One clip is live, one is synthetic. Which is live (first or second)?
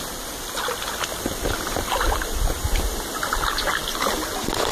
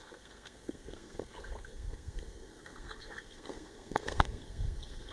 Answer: first